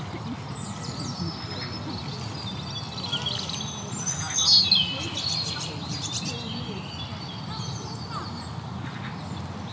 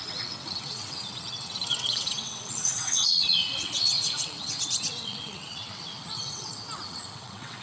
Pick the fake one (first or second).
second